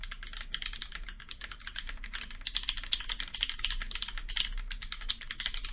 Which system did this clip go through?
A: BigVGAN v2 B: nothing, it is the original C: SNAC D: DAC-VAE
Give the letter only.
B